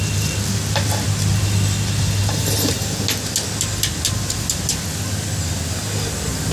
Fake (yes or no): no